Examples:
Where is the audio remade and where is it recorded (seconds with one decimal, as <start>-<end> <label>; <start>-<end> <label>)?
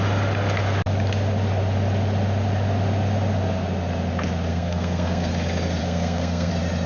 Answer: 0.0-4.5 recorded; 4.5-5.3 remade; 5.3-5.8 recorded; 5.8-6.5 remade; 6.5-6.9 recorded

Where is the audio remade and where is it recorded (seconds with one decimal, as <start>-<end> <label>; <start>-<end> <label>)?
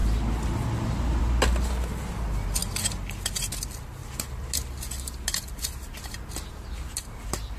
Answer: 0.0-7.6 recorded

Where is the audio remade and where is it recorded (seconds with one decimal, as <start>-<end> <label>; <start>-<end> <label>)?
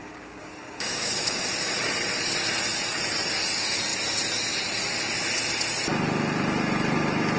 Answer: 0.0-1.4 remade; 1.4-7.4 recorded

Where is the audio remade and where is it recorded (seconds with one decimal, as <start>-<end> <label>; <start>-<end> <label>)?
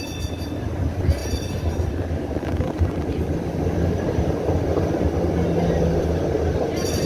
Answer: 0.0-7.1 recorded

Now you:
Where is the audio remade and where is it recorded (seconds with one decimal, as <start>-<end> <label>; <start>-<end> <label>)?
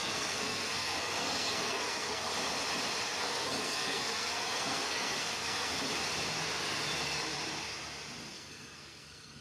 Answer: 0.0-2.3 remade; 2.3-3.2 recorded; 3.2-5.8 remade; 5.8-8.3 recorded; 8.3-9.4 remade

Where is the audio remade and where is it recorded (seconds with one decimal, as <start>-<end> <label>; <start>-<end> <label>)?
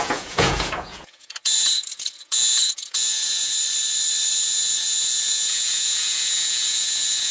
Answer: 0.0-3.5 remade; 3.5-4.3 recorded; 4.3-7.3 remade